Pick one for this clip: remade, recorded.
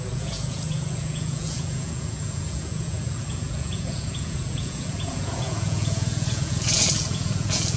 remade